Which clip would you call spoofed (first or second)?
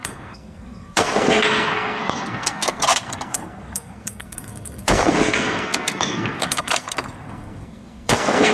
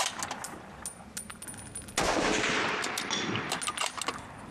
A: first